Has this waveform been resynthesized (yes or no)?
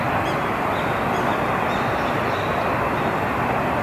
no